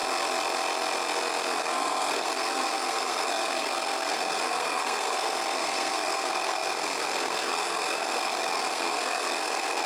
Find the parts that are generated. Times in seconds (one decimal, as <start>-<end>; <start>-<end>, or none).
1.6-9.9